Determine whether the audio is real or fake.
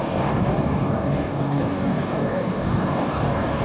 fake